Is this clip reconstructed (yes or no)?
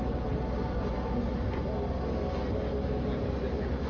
no